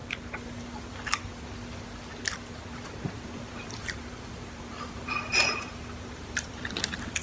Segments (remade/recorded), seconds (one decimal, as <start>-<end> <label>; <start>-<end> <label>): 0.0-2.5 recorded; 2.5-7.2 remade